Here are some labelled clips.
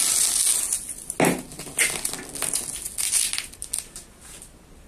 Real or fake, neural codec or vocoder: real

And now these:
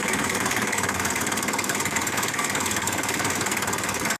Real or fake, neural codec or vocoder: fake, codec, SNAC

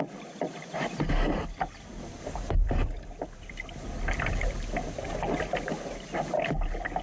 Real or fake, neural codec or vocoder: real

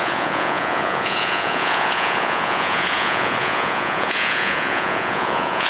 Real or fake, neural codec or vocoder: fake, vocoder, Vocos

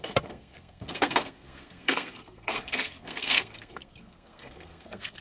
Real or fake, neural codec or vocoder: fake, codec, SNAC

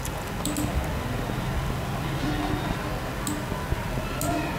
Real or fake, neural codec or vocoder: real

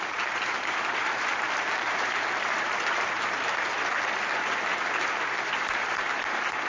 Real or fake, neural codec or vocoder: fake, vocoder, BigVGAN v2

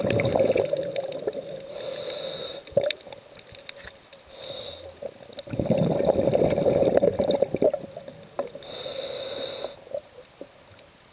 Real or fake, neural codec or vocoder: real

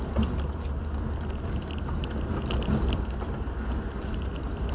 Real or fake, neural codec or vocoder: real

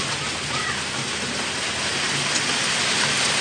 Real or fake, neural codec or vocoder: real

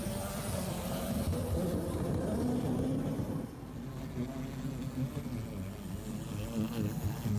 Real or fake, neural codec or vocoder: real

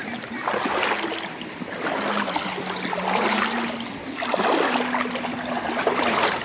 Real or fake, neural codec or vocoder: real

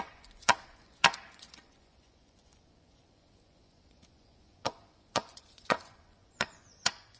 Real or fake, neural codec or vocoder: fake, vocoder, Vocos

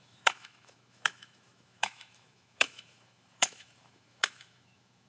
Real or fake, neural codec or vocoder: fake, autoencoder, DAC-VAE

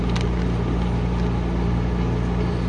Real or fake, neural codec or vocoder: real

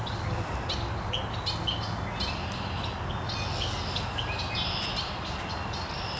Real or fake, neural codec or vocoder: real